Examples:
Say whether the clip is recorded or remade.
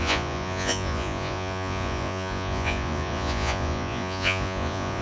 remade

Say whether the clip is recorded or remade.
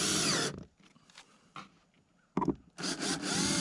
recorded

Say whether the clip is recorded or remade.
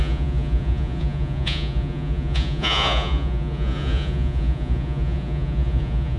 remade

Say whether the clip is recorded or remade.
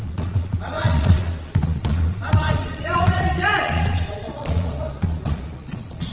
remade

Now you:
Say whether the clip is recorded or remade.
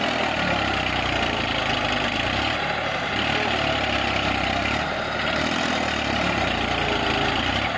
recorded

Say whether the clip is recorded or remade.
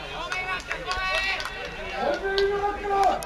recorded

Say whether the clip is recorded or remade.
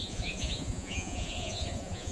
remade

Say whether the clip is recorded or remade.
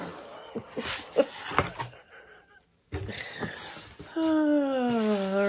recorded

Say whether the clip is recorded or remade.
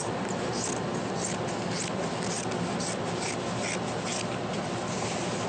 recorded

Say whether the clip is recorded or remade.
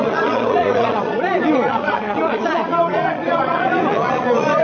remade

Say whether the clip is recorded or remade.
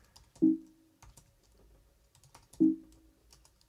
recorded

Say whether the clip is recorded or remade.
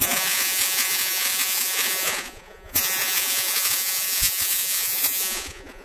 remade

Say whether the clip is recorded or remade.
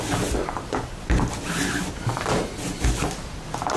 recorded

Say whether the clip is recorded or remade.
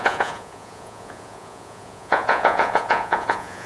remade